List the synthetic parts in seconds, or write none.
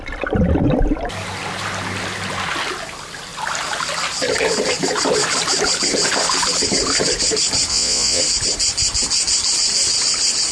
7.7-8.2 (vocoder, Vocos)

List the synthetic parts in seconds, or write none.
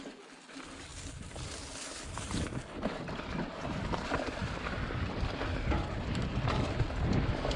none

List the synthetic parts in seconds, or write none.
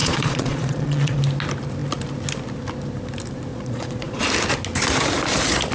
0.0-1.2 (vocoder, Vocos); 3.5-4.2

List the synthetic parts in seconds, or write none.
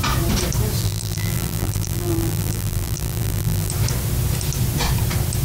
0.8-3.7 (vocoder, BigVGAN v2)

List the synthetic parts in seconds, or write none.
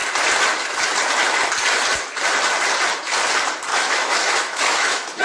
3.7-5.2 (autoencoder, DAC-VAE)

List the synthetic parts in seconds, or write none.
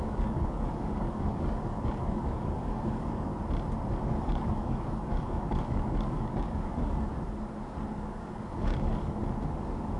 0.0-3.3 (codec, DAC); 4.2-7.1; 8.0-9.2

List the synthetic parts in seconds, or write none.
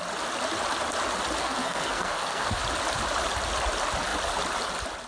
1.4-2.6 (codec, SNAC)